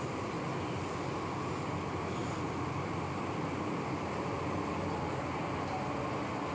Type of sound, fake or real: real